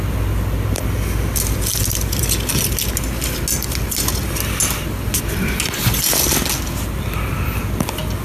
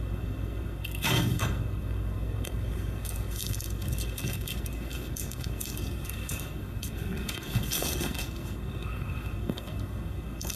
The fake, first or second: second